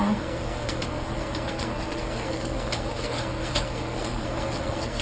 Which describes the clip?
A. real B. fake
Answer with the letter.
B